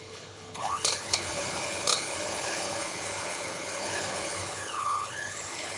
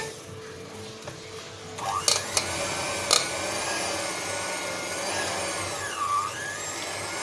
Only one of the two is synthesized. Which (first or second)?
first